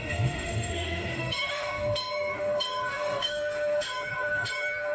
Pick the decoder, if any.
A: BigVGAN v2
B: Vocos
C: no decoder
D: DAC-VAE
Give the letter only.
D